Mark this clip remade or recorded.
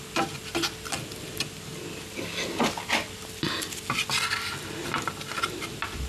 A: recorded